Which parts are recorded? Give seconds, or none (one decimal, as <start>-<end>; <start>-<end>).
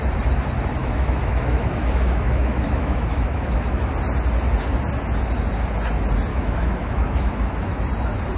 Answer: 0.0-0.8; 3.9-6.3; 7.8-8.4